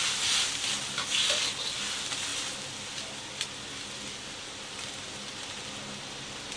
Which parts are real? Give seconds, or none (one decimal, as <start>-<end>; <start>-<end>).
0.0-6.6